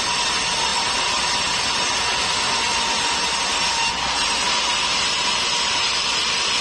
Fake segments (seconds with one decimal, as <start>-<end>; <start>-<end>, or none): 0.7-2.0